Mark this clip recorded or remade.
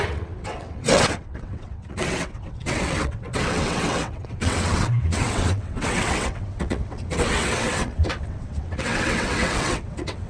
remade